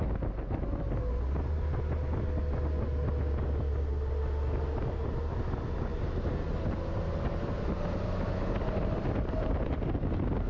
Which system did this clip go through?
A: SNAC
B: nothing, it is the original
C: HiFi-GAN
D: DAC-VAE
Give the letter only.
B